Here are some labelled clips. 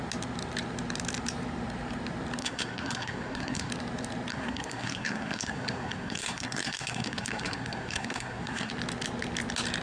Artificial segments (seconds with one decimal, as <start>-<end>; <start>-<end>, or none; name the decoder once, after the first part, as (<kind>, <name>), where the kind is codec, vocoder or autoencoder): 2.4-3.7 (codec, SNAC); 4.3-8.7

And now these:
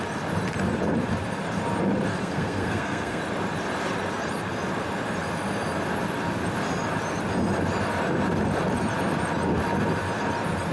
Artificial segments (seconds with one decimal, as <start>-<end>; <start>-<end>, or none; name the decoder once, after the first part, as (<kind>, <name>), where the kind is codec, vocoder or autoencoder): 2.2-3.2 (codec, SNAC)

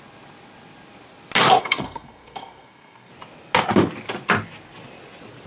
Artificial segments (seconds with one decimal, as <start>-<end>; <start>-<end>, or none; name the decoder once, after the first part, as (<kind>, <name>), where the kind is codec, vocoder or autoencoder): 1.6-3.1 (codec, SNAC)

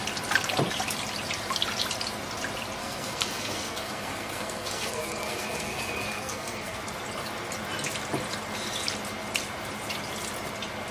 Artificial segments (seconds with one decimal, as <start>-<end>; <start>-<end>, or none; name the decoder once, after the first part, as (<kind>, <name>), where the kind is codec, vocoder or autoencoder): 2.8-6.8 (codec, SNAC)

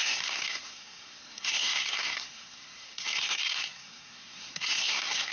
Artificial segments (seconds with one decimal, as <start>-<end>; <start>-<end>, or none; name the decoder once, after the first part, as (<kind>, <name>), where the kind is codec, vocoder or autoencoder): 0.0-5.3 (codec, SNAC)

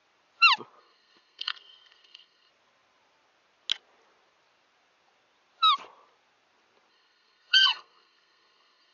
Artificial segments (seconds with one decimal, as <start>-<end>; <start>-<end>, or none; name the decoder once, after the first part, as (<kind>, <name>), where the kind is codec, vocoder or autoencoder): 0.8-2.5 (codec, SNAC); 6.9-8.9

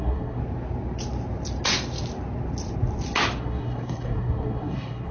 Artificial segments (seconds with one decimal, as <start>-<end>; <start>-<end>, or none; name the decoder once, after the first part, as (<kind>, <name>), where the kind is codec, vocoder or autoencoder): 0.0-0.4 (codec, SNAC); 3.4-5.1